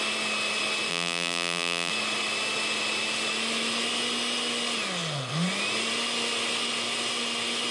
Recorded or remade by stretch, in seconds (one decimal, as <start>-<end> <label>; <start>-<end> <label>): 0.0-0.9 recorded; 0.9-1.9 remade; 1.9-7.7 recorded